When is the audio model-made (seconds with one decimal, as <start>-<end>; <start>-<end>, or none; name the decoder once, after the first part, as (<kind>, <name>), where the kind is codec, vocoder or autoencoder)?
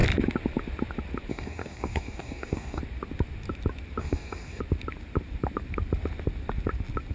1.3-2.8 (codec, DAC); 4.0-4.6